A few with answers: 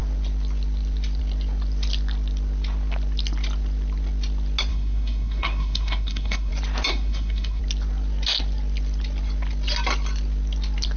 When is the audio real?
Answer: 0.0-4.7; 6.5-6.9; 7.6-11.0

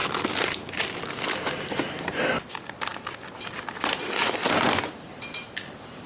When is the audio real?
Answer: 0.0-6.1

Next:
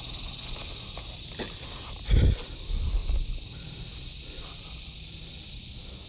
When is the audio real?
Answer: 0.0-6.1